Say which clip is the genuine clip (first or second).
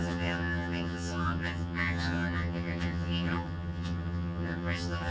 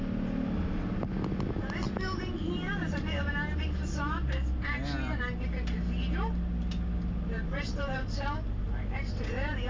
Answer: second